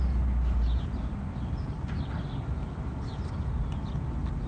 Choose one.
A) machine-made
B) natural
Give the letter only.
B